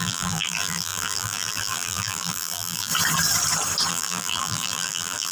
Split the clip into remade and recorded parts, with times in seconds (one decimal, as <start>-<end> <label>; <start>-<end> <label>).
0.0-2.9 remade; 2.9-3.9 recorded; 3.9-5.3 remade

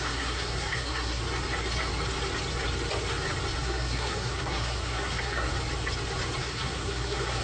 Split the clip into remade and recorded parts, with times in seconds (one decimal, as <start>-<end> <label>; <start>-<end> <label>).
0.0-1.2 remade; 1.2-3.6 recorded; 3.6-5.5 remade; 5.5-6.4 recorded; 6.4-7.4 remade

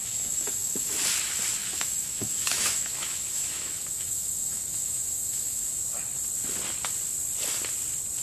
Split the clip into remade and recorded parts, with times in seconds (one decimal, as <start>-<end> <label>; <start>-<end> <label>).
0.0-0.9 remade; 0.9-1.6 recorded; 1.6-5.8 remade; 5.8-8.2 recorded